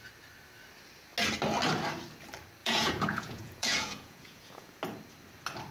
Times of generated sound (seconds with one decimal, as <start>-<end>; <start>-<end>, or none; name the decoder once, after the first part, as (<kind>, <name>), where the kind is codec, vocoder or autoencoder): 2.6-4.8 (vocoder, Vocos)